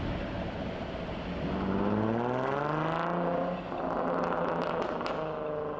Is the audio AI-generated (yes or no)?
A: no